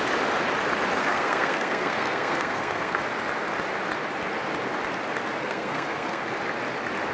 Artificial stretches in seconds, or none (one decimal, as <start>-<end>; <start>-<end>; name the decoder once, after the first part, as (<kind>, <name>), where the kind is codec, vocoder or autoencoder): 1.0-3.0 (codec, SNAC); 5.4-6.2